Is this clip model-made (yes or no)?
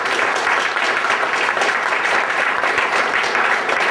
yes